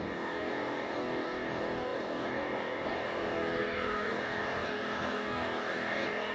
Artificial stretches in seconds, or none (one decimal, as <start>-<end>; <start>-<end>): 0.0-6.3